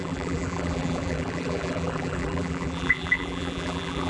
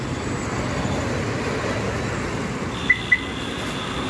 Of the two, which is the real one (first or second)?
second